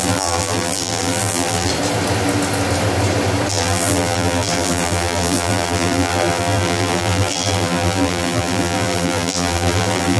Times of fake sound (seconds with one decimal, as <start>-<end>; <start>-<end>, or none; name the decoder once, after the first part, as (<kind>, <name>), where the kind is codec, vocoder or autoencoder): 0.0-1.7 (vocoder, BigVGAN v2); 3.5-10.2